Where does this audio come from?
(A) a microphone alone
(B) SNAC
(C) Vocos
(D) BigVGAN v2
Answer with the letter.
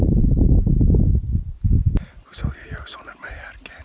A